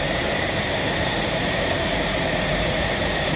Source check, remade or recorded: remade